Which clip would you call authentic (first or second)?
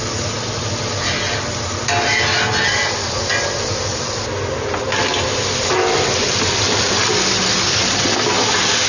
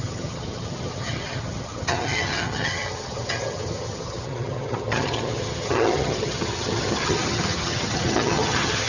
first